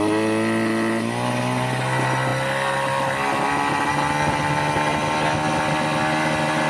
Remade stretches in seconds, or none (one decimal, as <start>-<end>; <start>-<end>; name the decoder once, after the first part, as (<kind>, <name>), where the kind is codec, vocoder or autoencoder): none